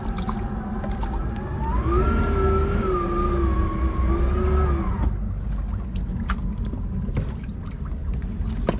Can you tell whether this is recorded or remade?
recorded